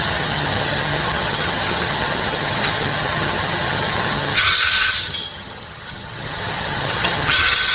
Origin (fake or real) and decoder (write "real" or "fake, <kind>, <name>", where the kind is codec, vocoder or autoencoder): fake, vocoder, HiFi-GAN